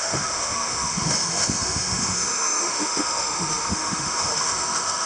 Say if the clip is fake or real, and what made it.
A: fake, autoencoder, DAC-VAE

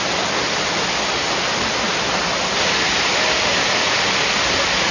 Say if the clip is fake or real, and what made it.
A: real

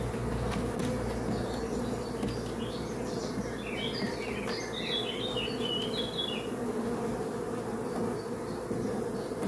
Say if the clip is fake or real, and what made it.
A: real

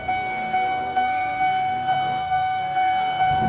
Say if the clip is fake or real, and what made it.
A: fake, codec, SNAC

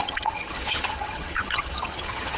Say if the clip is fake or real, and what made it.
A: fake, vocoder, HiFi-GAN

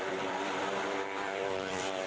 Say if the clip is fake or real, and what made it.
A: fake, vocoder, BigVGAN v2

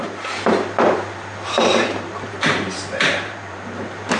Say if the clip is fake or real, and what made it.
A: fake, vocoder, BigVGAN v2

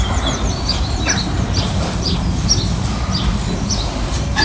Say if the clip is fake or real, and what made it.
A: real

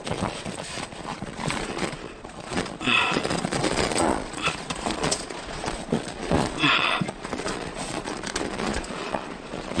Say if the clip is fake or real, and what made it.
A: fake, vocoder, Vocos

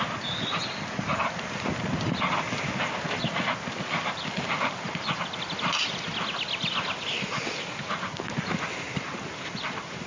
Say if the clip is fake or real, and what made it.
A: real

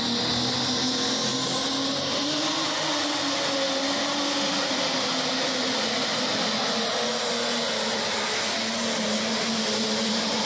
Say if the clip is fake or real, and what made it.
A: real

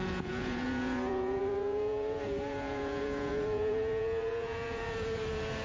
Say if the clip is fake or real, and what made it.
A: fake, vocoder, Vocos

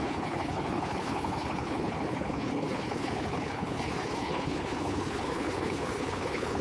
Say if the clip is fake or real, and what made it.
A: fake, codec, HILCodec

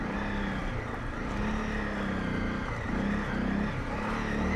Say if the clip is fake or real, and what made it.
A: real